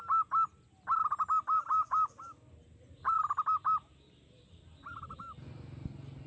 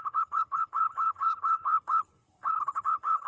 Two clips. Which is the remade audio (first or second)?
second